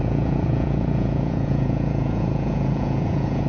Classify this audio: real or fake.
fake